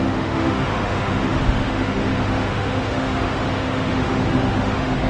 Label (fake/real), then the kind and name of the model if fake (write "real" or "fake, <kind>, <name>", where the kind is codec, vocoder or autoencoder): fake, autoencoder, DAC-VAE